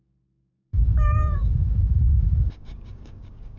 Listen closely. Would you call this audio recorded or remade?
remade